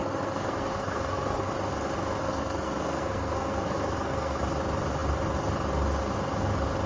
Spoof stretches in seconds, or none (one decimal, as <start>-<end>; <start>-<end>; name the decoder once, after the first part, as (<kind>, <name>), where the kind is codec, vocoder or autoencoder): 0.0-1.5 (codec, SNAC); 2.2-4.4